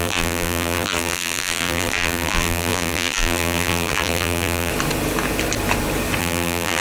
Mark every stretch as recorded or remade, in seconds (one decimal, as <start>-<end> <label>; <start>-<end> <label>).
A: 0.0-4.7 remade; 4.7-6.2 recorded; 6.2-6.8 remade